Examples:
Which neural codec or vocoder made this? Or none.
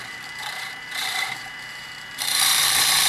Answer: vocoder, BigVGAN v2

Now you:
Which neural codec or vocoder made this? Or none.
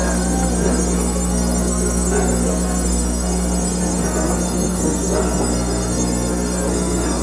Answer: codec, SNAC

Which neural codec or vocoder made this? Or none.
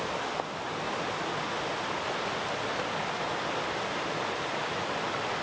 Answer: none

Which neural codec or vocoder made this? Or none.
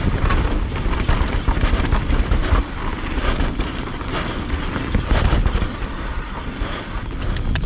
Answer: none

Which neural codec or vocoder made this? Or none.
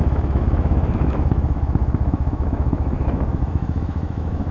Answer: autoencoder, DAC-VAE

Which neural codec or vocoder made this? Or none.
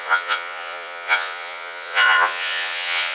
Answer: vocoder, Vocos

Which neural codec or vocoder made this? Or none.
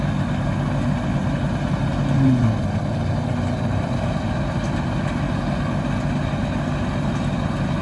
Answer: none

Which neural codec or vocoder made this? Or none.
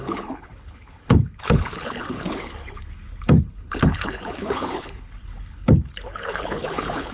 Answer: codec, HILCodec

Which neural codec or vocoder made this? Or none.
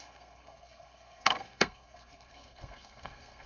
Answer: codec, SNAC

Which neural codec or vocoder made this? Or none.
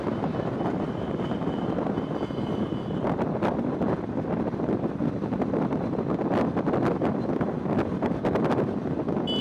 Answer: none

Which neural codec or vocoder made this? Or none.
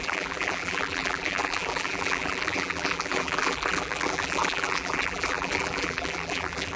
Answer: vocoder, BigVGAN v2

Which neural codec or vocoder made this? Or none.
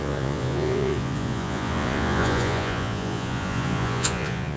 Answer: vocoder, Vocos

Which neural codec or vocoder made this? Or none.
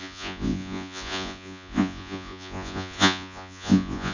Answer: vocoder, Vocos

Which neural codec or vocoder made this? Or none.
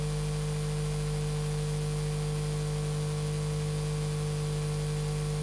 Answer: none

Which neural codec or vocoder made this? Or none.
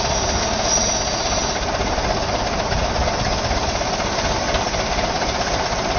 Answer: none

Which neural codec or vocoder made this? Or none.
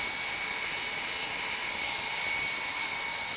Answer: none